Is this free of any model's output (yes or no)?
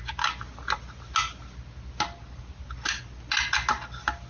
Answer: yes